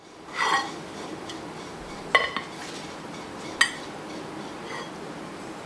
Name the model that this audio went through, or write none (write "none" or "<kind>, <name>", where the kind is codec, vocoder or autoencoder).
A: none